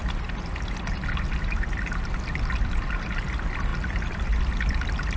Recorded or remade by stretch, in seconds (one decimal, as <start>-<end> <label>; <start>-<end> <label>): 0.0-5.2 recorded